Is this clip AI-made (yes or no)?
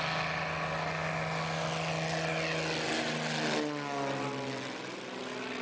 no